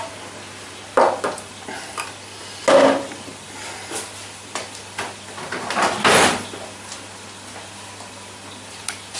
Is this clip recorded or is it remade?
recorded